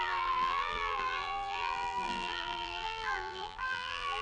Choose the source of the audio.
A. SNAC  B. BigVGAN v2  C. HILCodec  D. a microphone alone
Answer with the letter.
B